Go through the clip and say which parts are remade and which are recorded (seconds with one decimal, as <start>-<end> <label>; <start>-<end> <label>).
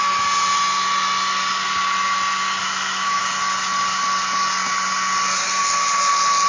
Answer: 0.0-2.6 recorded; 2.6-3.2 remade; 3.2-6.5 recorded